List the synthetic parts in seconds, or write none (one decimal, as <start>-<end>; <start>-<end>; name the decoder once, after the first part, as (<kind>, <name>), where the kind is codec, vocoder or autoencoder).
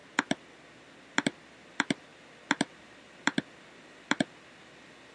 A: none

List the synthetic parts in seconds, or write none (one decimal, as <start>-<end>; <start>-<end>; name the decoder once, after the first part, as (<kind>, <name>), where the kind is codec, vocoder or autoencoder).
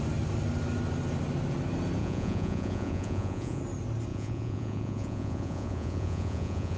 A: 2.0-3.6 (vocoder, Vocos); 4.1-6.8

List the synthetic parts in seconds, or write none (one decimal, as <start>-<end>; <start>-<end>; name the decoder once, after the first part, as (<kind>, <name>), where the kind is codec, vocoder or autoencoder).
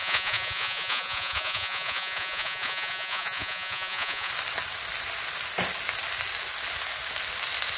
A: 0.0-4.3 (vocoder, Vocos)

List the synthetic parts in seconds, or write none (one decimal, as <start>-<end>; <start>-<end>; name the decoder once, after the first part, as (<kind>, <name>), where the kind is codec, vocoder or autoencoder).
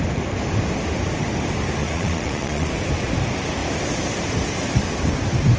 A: 1.8-2.7 (vocoder, Vocos)